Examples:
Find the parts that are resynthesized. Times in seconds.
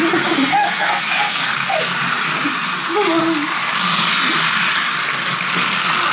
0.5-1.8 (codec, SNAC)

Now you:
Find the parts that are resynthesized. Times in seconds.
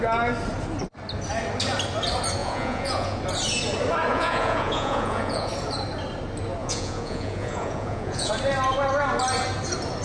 2.4-3.2 (vocoder, Vocos); 4.1-5.5; 6.6-8.3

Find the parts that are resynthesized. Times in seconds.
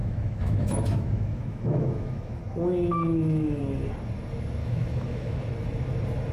0.0-2.4 (autoencoder, DAC-VAE); 2.9-3.6; 4.6-5.4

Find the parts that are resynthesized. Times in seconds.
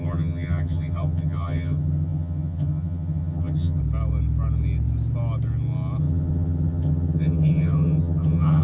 0.0-3.8 (vocoder, HiFi-GAN); 6.0-8.6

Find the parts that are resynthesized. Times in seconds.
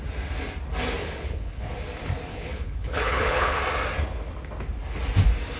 1.0-1.6 (codec, HILCodec); 2.3-3.6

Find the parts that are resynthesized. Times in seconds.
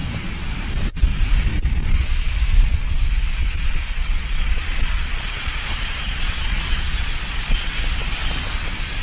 1.5-2.3 (vocoder, Vocos); 3.4-7.7